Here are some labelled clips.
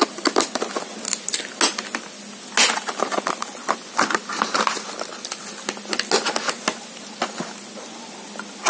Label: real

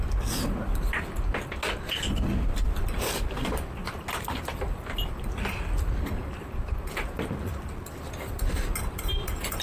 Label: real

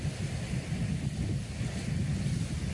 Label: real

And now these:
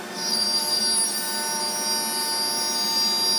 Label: real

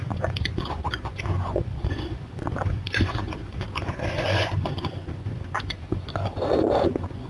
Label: fake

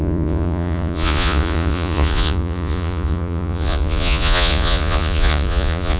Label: fake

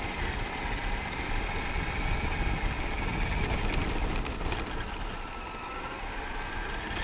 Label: real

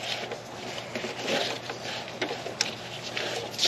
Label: real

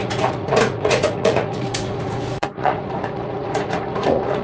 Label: fake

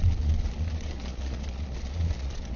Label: fake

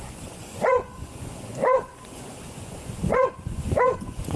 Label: fake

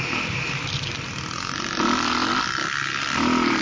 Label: real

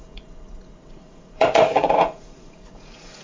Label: fake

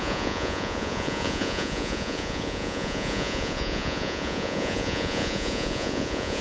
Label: fake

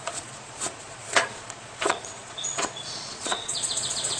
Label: fake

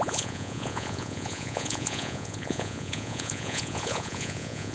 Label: fake